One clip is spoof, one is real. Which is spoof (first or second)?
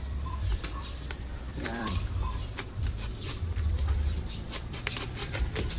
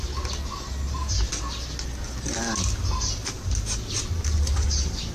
first